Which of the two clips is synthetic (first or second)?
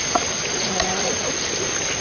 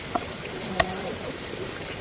second